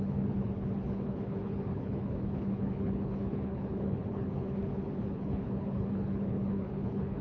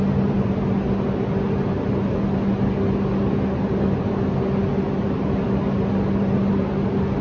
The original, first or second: second